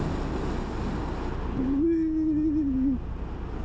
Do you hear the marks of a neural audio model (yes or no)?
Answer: no